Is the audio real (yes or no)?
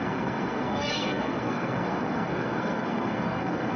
no